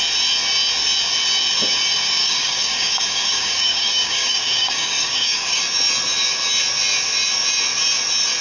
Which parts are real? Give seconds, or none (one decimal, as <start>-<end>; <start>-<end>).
0.0-2.2; 5.6-8.4